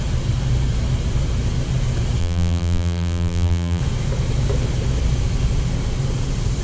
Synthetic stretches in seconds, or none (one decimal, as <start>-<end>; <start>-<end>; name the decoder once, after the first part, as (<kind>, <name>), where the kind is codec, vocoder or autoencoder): 2.2-3.8 (vocoder, BigVGAN v2)